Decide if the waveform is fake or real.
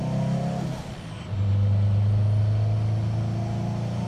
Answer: real